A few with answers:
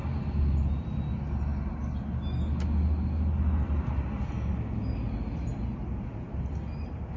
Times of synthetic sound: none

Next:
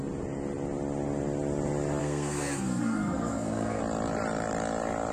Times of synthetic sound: 2.0-3.8 (codec, SNAC)

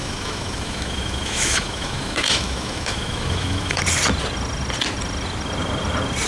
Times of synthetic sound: 0.0-3.8 (autoencoder, DAC-VAE)

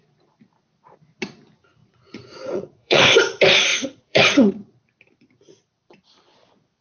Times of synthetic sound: 1.8-3.0 (vocoder, Vocos); 3.7-4.5

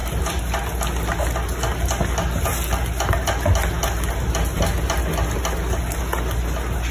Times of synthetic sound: none

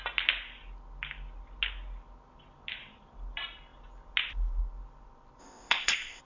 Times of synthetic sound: 5.4-6.2 (codec, ZipCodec)